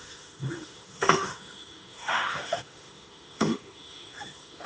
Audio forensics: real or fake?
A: fake